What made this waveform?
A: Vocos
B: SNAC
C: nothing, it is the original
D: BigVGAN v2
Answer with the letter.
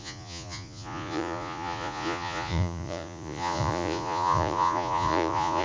A